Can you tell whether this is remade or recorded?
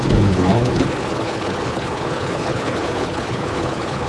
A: remade